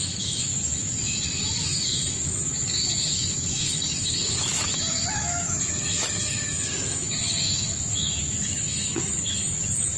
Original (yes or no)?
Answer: no